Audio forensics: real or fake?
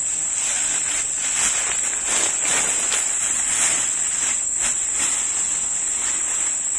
real